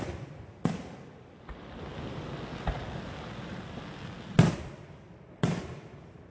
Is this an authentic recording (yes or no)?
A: yes